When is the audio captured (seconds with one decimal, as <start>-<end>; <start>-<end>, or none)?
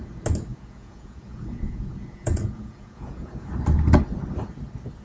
0.0-0.5; 3.5-5.0